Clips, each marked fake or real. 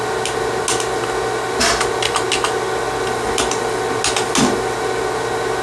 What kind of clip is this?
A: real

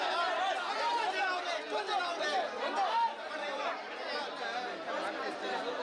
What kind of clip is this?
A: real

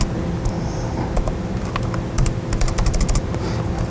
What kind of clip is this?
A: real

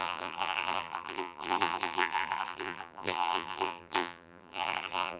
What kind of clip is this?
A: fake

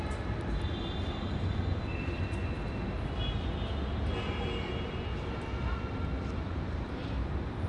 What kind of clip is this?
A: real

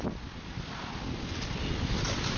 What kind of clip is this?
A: real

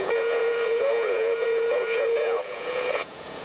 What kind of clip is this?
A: fake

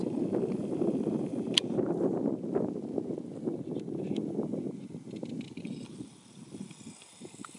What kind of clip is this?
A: real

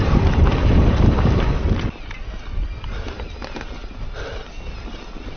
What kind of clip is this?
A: real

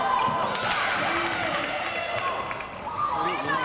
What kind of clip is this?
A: real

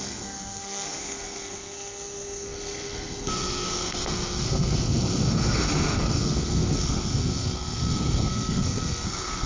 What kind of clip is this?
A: fake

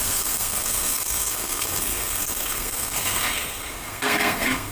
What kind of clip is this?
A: fake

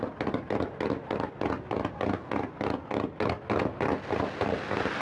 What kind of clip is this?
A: real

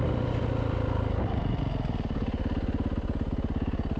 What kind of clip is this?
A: real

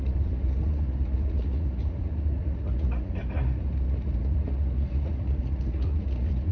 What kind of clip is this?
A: fake